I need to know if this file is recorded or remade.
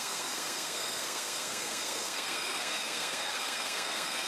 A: remade